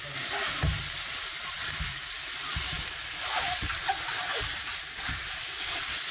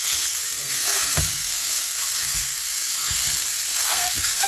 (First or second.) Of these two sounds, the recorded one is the first